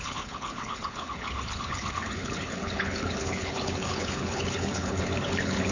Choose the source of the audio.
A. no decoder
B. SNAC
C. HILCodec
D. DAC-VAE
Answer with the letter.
C